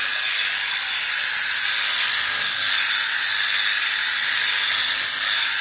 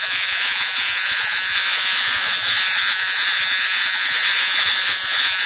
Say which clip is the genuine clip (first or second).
first